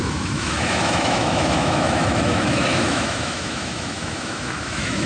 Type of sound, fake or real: fake